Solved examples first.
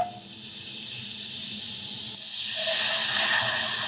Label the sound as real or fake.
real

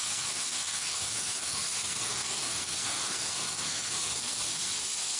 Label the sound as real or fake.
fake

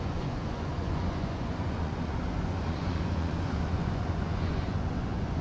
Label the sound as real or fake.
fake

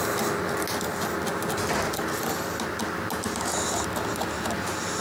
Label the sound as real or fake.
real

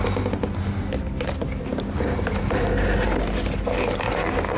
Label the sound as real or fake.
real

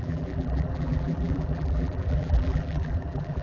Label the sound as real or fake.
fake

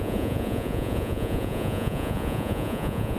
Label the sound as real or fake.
fake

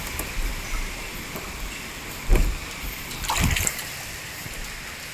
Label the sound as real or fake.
fake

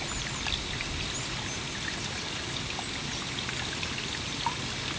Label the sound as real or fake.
real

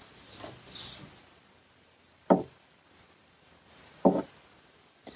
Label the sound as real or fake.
real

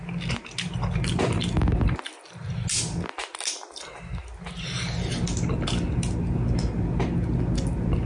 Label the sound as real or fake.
real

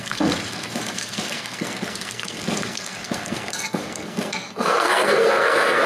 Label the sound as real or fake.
fake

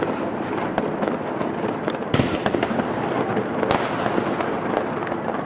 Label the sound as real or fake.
real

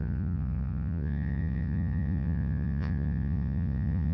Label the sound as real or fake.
fake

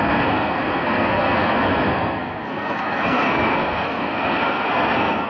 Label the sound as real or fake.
fake